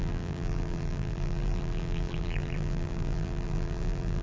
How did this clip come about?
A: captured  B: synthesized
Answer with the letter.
B